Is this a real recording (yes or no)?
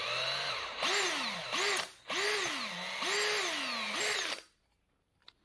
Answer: yes